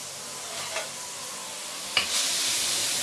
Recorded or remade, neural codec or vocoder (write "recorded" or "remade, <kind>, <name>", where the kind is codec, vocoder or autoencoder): recorded